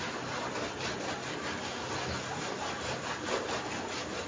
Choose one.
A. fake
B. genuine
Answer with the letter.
B